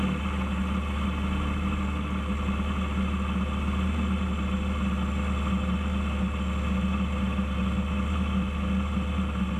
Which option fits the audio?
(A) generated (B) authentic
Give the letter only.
B